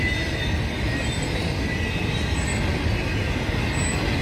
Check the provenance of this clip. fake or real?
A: real